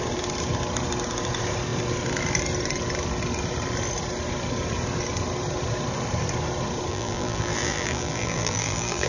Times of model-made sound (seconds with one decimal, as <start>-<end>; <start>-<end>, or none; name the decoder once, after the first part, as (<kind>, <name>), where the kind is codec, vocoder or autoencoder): 6.9-9.1 (vocoder, BigVGAN v2)

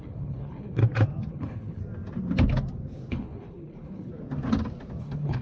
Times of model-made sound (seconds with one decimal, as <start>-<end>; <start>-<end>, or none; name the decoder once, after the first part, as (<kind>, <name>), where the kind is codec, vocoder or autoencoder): 0.0-0.8 (codec, HILCodec); 1.3-1.8; 3.1-4.1; 5.0-5.4